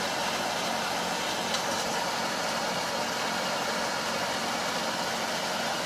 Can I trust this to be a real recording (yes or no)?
yes